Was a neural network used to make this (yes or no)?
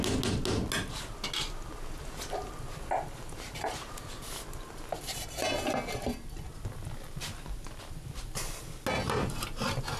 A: no